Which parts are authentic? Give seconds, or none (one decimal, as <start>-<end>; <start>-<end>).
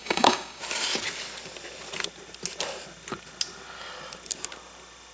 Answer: 0.6-5.1